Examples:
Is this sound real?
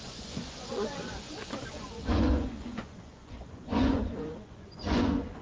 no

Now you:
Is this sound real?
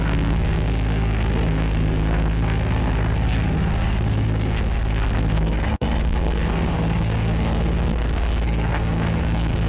no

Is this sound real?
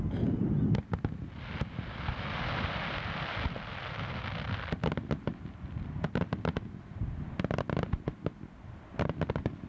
yes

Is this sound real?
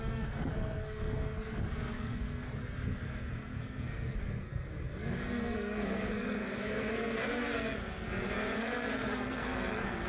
no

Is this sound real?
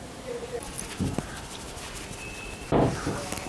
yes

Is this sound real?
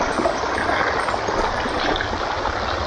yes